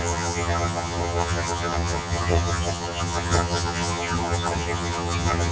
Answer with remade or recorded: remade